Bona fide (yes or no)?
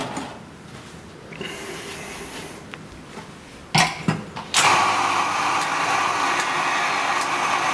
yes